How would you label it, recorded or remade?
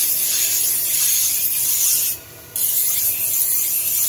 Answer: recorded